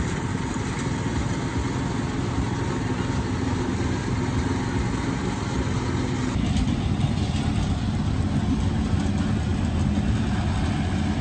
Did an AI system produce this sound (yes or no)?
no